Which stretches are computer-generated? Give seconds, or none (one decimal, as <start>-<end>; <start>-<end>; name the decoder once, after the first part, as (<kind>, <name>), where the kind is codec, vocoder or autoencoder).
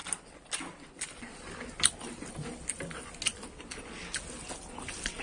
none